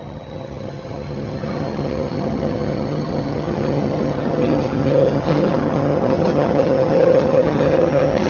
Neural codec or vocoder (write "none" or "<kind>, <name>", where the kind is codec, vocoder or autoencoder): vocoder, HiFi-GAN